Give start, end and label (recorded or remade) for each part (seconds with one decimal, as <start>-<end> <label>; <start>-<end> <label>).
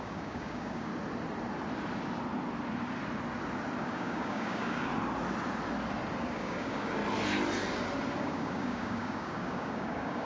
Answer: 0.0-0.9 remade; 0.9-3.8 recorded; 3.8-4.9 remade; 4.9-6.2 recorded; 6.2-7.0 remade; 7.0-8.2 recorded; 8.2-10.3 remade